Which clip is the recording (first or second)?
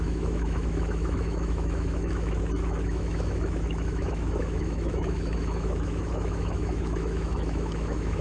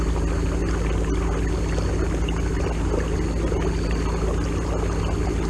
second